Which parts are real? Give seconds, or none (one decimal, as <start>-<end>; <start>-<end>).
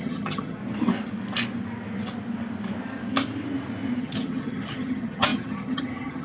0.6-4.0